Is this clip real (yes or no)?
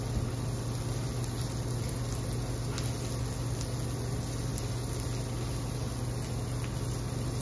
yes